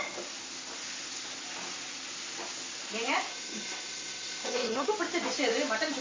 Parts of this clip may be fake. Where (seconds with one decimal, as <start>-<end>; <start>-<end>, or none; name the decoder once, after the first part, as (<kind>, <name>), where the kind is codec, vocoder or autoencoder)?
3.3-4.9 (codec, SNAC)